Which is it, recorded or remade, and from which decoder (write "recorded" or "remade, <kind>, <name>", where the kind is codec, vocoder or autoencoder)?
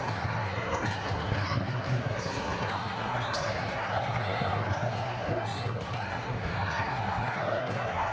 remade, codec, SNAC